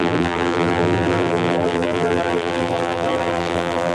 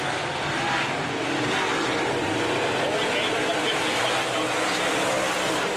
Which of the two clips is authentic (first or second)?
second